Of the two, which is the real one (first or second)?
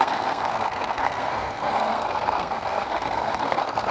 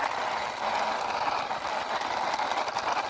second